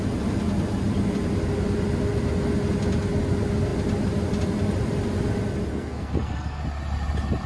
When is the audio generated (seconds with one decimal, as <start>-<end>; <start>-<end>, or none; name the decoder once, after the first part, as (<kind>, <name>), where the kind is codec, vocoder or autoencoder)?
5.7-6.6 (codec, SNAC)